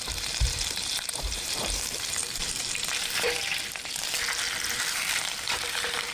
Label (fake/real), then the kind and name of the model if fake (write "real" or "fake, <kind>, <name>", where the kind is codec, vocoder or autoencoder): fake, vocoder, BigVGAN v2